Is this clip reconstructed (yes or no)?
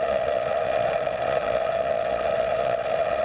yes